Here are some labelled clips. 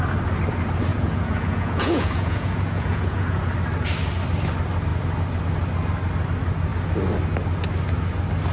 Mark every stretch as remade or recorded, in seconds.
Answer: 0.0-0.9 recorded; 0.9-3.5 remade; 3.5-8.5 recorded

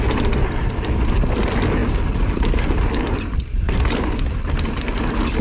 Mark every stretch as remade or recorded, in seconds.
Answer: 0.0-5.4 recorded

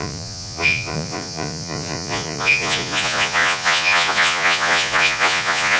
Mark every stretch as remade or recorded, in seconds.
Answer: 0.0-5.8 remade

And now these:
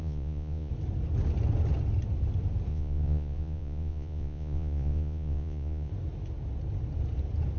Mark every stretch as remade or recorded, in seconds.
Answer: 0.0-0.7 remade; 0.7-2.7 recorded; 2.7-5.9 remade; 5.9-7.6 recorded

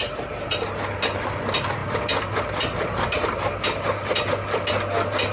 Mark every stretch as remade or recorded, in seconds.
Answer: 0.0-5.3 recorded